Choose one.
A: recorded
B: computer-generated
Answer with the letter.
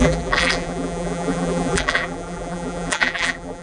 B